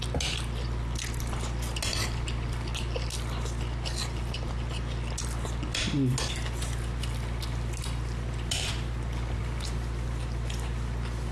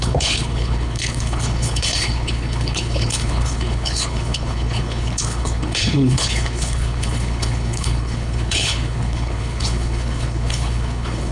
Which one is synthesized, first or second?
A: second